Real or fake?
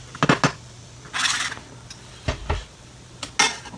real